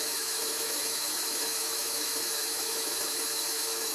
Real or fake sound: fake